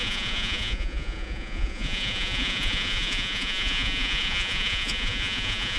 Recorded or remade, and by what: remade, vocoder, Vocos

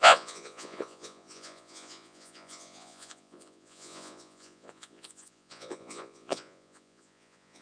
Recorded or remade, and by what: remade, vocoder, Vocos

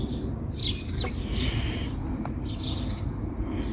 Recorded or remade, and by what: recorded